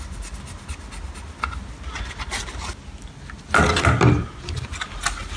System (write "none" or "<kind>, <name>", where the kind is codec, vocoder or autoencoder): none